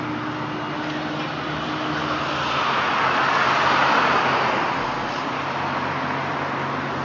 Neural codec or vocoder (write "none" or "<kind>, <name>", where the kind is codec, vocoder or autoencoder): none